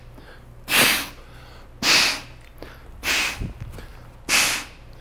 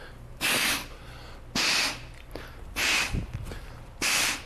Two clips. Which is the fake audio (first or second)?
second